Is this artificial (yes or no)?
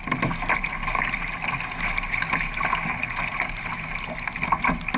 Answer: no